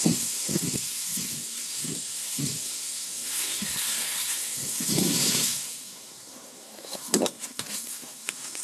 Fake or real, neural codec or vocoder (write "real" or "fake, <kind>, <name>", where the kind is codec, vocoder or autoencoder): fake, codec, SNAC